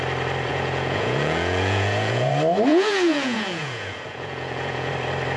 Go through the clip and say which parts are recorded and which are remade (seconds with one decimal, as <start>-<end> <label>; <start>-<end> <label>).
0.0-0.5 recorded; 0.5-2.3 remade; 2.3-2.7 recorded; 2.7-4.9 remade; 4.9-5.4 recorded

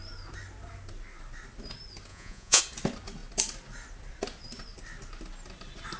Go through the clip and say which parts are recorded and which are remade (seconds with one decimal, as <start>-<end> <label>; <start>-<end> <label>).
0.0-2.1 recorded; 2.1-2.6 remade; 2.6-6.0 recorded

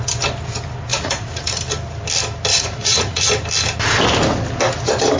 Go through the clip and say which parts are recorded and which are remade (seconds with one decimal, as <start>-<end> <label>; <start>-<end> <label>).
0.0-0.9 recorded; 0.9-1.6 remade; 1.6-2.5 recorded; 2.5-3.3 remade; 3.3-5.2 recorded

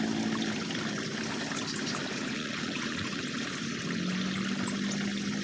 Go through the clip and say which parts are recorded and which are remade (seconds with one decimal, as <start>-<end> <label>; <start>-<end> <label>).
0.0-2.1 recorded; 2.1-3.2 remade; 3.2-5.4 recorded